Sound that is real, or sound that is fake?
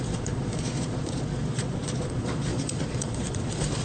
fake